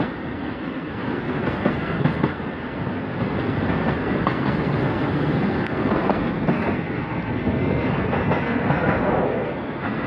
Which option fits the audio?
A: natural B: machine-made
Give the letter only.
B